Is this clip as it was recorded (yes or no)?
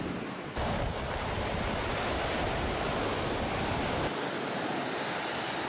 yes